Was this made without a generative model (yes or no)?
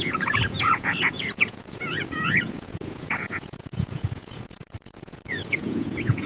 no